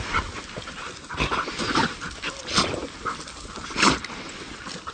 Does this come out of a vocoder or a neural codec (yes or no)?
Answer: no